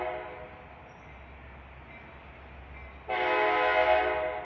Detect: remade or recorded recorded